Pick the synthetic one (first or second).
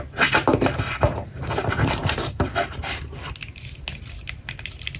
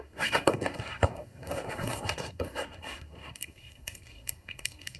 second